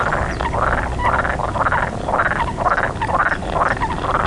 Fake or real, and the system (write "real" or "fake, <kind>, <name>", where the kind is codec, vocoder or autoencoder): real